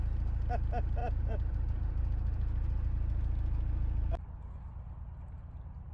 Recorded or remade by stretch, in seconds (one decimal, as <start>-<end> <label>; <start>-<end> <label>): 0.0-1.0 recorded; 1.0-2.9 remade; 2.9-5.9 recorded